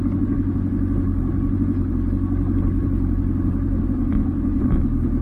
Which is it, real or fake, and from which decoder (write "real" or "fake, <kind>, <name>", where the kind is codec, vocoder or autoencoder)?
real